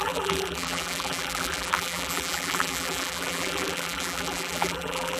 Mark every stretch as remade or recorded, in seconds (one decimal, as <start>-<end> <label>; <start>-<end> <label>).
0.0-5.2 remade

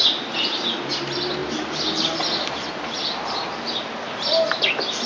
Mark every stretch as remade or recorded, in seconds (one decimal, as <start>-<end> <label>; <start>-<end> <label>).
0.0-5.1 recorded